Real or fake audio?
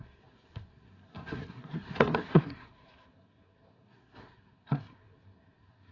fake